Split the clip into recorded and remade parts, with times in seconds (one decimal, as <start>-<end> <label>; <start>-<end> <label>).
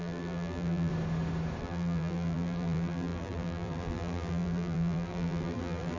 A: 0.0-0.9 remade; 0.9-1.6 recorded; 1.6-6.0 remade